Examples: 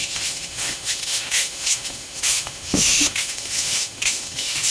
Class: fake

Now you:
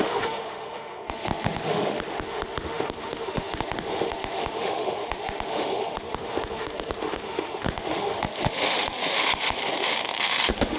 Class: fake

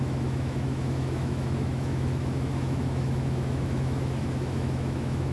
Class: fake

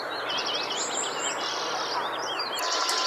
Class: real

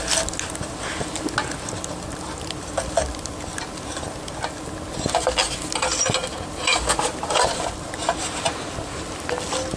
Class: real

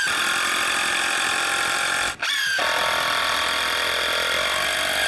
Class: real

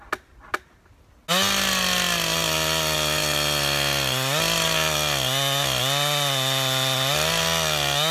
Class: real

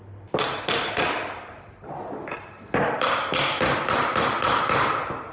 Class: real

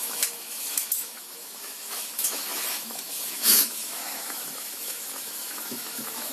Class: fake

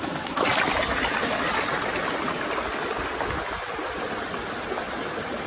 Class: real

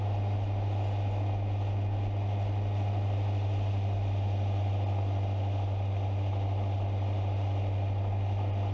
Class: real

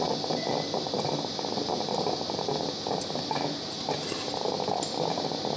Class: real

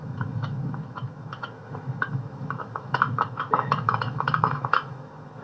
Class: fake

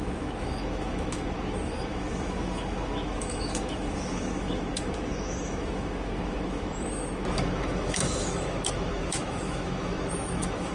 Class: fake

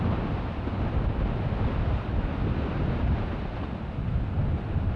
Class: real